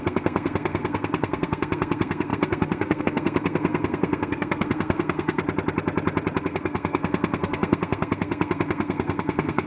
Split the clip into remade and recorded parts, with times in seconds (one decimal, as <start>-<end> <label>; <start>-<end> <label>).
0.0-5.4 remade; 5.4-6.4 recorded; 6.4-9.7 remade